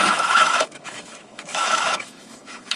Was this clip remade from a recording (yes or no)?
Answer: yes